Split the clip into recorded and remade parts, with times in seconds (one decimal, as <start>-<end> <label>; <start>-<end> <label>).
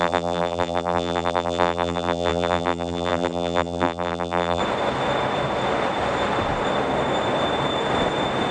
0.0-4.6 remade; 4.6-8.5 recorded